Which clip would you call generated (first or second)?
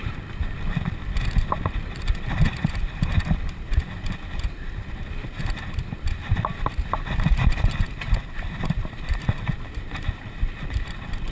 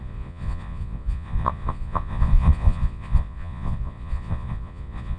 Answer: second